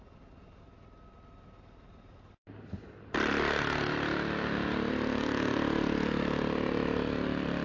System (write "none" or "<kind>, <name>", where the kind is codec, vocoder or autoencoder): none